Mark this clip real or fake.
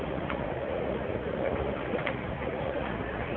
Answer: fake